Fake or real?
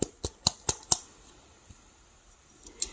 real